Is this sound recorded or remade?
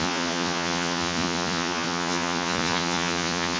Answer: remade